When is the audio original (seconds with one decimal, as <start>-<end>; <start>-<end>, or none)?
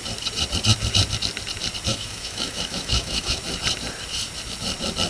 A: 0.0-1.9; 3.4-5.1